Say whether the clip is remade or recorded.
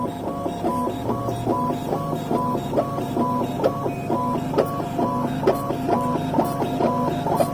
recorded